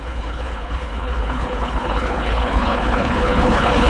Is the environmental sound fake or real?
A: fake